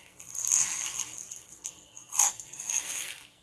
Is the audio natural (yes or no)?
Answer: no